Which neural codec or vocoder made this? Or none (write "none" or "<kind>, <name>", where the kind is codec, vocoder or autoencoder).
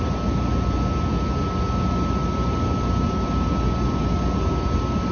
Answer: none